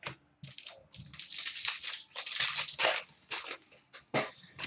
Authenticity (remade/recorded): recorded